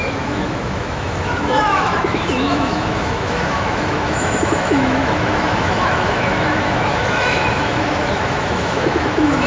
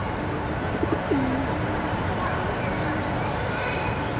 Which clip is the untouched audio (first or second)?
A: second